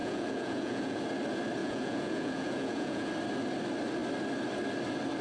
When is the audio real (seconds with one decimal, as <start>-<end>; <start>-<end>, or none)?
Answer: 1.0-1.6; 3.1-5.2